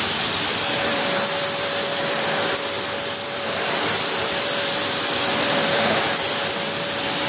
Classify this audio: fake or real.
fake